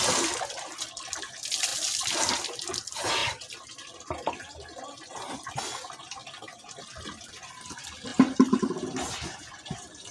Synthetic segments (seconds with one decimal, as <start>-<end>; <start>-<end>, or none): 8.1-10.1